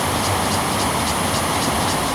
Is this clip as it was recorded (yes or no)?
yes